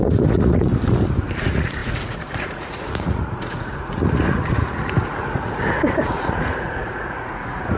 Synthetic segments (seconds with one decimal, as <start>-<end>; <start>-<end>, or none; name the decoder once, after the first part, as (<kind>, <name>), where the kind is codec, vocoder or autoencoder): 0.0-0.7 (vocoder, Vocos); 1.4-7.8